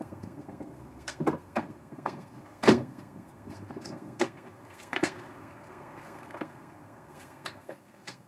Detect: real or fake fake